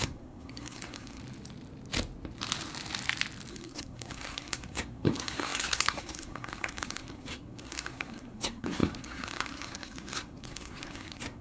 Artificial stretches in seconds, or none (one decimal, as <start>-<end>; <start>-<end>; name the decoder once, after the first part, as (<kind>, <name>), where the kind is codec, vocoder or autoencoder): 0.0-1.2 (codec, SNAC); 3.5-11.4